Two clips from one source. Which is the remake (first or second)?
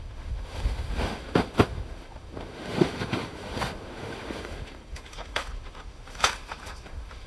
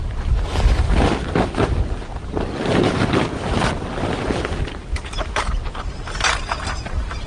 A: first